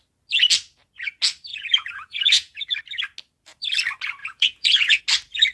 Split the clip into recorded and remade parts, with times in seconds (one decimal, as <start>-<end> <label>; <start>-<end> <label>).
0.0-1.5 recorded; 1.5-2.8 remade; 2.8-4.2 recorded; 4.2-5.0 remade; 5.0-5.5 recorded